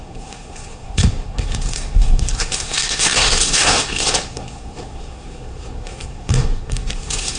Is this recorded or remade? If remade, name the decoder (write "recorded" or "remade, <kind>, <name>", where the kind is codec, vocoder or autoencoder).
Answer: remade, codec, SNAC